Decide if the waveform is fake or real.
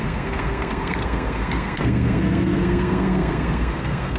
fake